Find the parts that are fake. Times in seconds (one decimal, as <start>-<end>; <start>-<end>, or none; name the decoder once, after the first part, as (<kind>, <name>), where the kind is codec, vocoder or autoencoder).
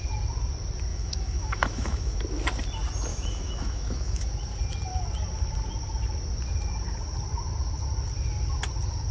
0.9-2.2 (autoencoder, DAC-VAE); 3.1-4.3